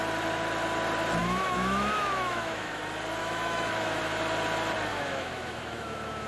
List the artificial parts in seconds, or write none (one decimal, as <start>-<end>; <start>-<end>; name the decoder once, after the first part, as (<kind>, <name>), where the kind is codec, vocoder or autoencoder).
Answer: 1.2-2.8 (autoencoder, DAC-VAE); 3.2-4.0; 4.9-6.3

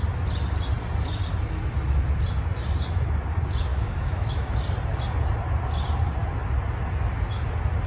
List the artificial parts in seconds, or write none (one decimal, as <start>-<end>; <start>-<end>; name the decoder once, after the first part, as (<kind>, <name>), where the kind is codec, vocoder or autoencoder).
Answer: 3.7-4.5 (autoencoder, DAC-VAE)

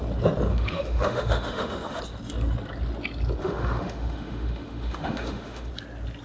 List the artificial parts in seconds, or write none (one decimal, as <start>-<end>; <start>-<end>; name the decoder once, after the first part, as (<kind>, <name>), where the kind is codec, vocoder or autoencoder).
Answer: 0.5-2.0 (autoencoder, DAC-VAE); 3.4-5.7

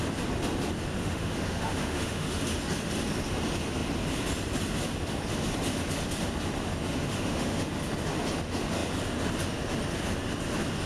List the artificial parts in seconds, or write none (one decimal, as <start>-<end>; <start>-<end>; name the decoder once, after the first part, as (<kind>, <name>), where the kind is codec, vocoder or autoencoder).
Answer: 1.0-2.4 (autoencoder, DAC-VAE); 7.1-7.7

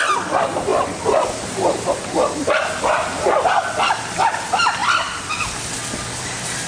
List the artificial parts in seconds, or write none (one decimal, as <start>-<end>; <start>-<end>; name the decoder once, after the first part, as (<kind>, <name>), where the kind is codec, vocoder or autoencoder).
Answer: none